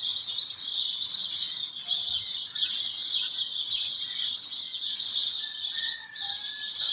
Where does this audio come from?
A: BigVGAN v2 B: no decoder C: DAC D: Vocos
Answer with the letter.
B